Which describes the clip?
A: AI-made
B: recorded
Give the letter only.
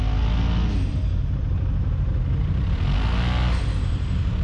B